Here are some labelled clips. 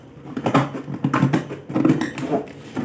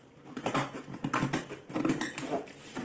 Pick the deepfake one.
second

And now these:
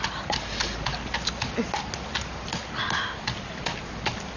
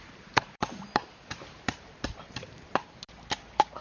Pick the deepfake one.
second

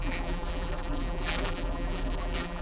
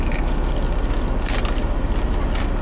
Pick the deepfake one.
first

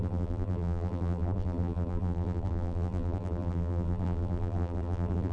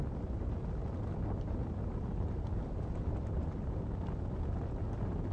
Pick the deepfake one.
first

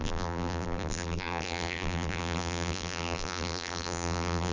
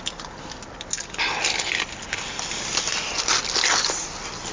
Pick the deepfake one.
first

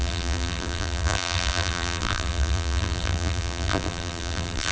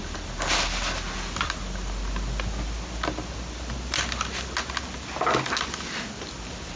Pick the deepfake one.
first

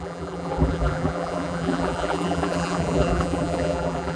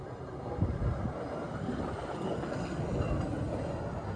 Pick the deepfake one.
first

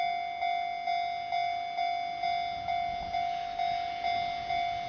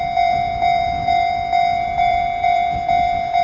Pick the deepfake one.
second